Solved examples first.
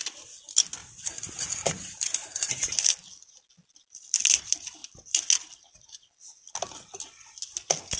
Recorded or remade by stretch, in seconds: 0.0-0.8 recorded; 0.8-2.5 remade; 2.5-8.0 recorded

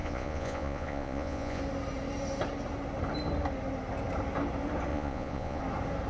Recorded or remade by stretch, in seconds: 0.0-1.6 remade; 1.6-4.9 recorded; 4.9-5.6 remade; 5.6-6.1 recorded

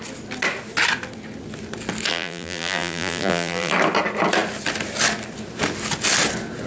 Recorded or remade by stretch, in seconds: 0.0-2.1 recorded; 2.1-3.7 remade; 3.7-6.7 recorded